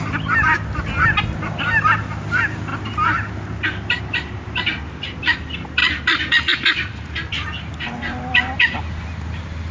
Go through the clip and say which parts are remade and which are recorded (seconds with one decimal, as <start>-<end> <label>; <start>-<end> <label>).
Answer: 0.0-9.7 recorded